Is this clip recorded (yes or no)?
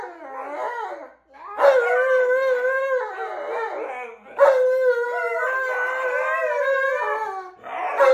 yes